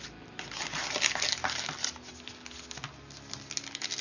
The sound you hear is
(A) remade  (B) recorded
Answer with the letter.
B